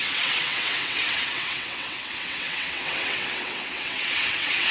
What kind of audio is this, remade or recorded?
remade